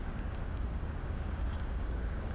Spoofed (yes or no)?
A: yes